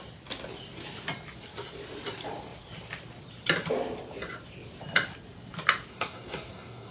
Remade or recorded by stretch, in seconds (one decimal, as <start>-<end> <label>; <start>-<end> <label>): 0.0-5.9 recorded; 5.9-6.9 remade